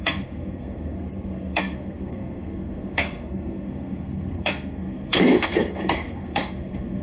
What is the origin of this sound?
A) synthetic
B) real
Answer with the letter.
A